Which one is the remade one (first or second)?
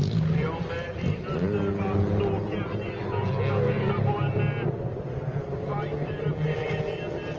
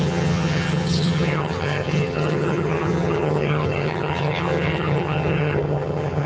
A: second